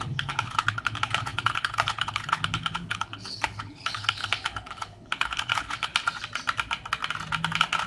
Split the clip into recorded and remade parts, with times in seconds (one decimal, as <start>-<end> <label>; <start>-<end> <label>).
0.0-5.9 remade; 5.9-7.9 recorded